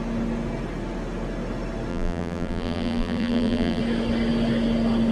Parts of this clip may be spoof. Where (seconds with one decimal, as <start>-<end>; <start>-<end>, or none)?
1.9-3.8